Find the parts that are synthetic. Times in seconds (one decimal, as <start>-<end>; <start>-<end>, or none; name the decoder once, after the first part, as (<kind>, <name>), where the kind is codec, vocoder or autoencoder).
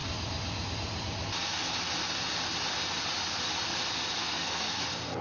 4.2-4.8 (codec, SNAC)